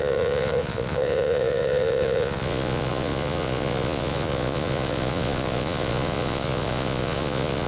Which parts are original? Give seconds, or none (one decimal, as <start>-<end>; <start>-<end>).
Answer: none